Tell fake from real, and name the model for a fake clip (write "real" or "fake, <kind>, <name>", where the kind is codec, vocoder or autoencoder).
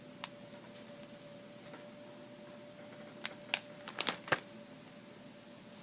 real